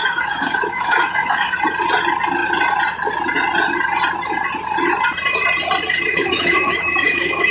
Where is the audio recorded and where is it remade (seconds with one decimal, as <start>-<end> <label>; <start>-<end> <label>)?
0.0-1.6 remade; 1.6-6.1 recorded; 6.1-7.5 remade